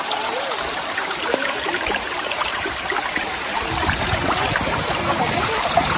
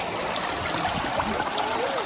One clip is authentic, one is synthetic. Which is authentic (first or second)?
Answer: second